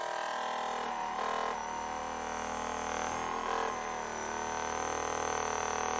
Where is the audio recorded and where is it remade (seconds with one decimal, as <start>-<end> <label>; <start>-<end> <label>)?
0.0-6.0 recorded